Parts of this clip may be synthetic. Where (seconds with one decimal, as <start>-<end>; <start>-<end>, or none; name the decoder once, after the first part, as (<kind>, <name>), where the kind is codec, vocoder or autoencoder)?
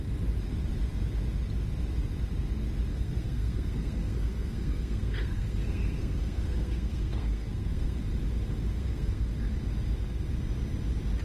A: 2.9-8.0 (codec, SNAC); 8.7-9.3